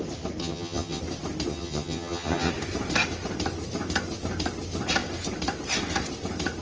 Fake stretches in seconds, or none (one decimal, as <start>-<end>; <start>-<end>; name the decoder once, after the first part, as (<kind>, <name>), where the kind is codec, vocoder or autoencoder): 0.4-1.0 (vocoder, HiFi-GAN); 1.5-2.5